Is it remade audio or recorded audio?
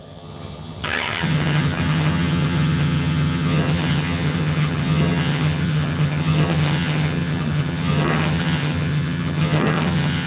remade